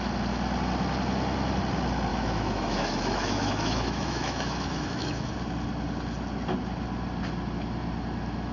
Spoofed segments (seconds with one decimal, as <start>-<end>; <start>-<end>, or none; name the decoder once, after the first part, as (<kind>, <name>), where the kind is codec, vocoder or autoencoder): 2.1-5.3 (autoencoder, DAC-VAE)